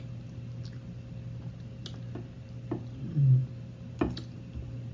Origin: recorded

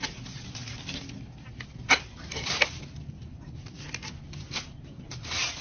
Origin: recorded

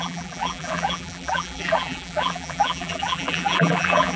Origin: remade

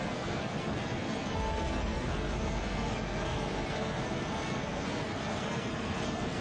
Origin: remade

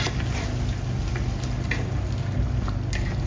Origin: recorded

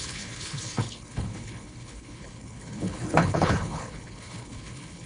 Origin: remade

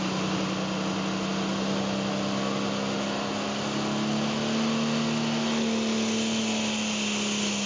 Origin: recorded